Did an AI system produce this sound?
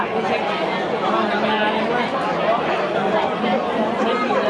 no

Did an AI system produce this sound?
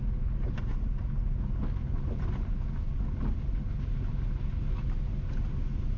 no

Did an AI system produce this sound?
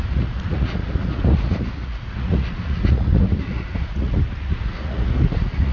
yes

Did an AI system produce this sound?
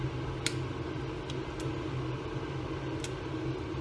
no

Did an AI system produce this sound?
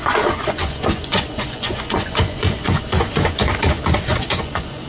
yes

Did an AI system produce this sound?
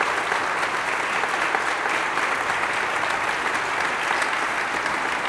no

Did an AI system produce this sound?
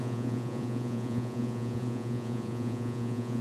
yes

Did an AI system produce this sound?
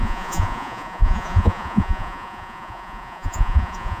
yes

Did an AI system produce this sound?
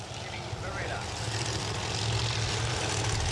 no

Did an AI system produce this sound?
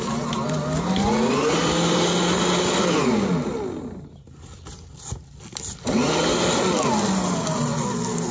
no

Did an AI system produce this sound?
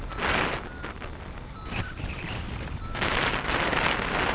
no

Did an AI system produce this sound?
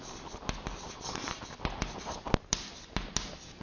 no